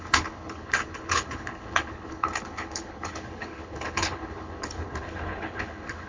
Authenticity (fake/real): fake